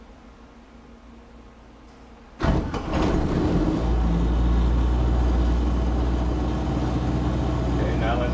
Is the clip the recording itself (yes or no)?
yes